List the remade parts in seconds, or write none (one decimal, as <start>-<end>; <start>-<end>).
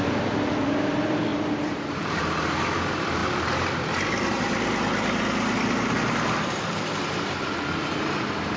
1.3-2.2